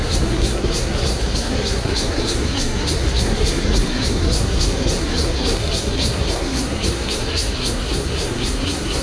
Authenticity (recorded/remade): remade